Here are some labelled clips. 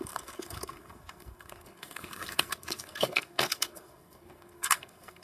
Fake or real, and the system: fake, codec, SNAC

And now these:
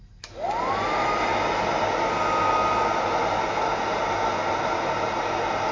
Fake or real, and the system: real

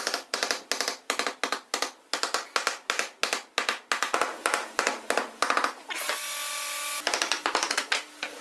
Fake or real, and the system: real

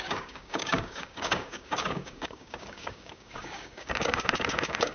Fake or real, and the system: fake, codec, DAC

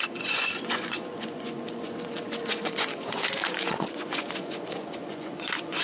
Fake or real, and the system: fake, vocoder, Vocos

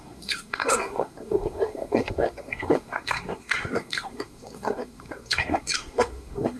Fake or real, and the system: fake, codec, SNAC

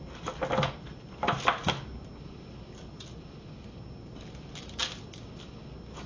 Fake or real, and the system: real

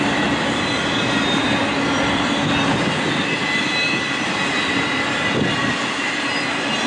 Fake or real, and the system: real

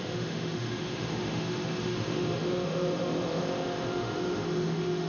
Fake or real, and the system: fake, autoencoder, DAC-VAE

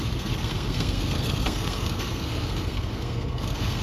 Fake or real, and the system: fake, codec, SNAC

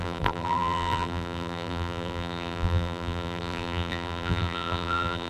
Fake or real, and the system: fake, vocoder, BigVGAN v2